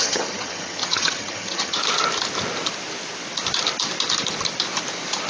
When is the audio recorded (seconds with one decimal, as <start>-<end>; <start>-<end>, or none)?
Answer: 1.8-5.3